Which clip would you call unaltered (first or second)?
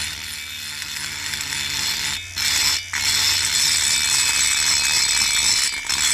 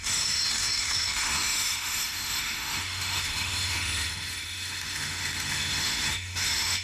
first